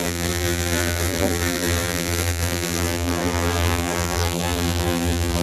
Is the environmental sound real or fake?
fake